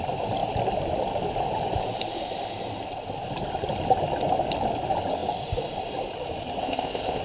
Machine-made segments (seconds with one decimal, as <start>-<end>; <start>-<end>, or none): 6.6-7.2